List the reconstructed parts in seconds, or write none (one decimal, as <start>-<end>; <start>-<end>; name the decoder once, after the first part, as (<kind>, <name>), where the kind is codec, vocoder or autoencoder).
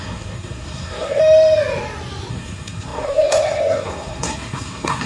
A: 0.0-1.2 (codec, SNAC); 2.3-5.1